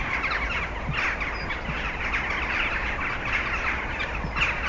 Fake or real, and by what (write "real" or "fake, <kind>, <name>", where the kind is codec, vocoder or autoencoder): real